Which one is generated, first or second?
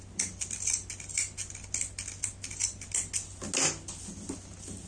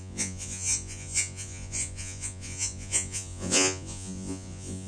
second